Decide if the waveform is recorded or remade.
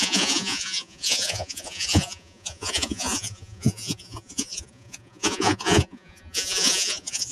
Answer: remade